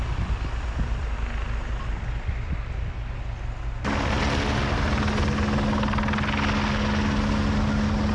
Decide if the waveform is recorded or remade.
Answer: recorded